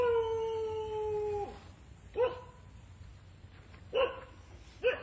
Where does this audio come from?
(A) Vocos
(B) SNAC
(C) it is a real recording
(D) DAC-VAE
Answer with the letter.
C